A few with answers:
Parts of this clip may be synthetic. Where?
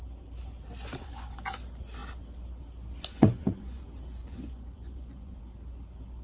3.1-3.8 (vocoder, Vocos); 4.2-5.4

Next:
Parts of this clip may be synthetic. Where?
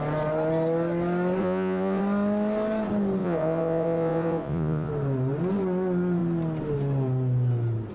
1.4-2.0 (vocoder, Vocos); 3.2-4.9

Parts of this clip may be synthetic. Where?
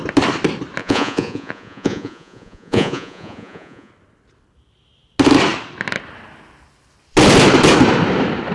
0.8-3.9 (vocoder, Vocos)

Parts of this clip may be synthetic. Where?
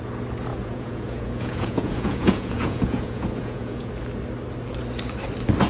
0.5-3.9 (vocoder, Vocos)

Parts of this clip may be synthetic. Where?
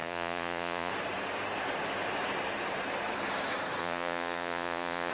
0.0-0.9 (vocoder, Vocos); 3.8-5.1